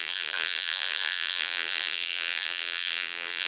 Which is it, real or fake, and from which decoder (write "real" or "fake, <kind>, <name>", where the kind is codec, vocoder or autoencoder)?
fake, vocoder, BigVGAN v2